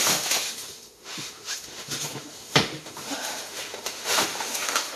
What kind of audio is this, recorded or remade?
remade